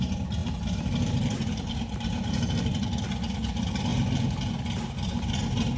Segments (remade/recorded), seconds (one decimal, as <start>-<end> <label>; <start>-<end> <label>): 0.0-0.4 remade; 0.4-1.0 recorded; 1.0-2.7 remade; 2.7-3.4 recorded; 3.4-3.9 remade; 3.9-5.8 recorded